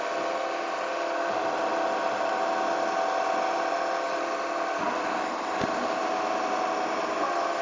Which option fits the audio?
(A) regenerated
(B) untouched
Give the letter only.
B